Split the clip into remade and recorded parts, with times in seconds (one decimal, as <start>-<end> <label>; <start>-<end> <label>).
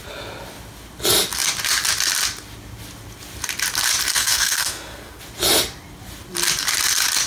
0.0-4.1 recorded; 4.1-5.2 remade; 5.2-7.3 recorded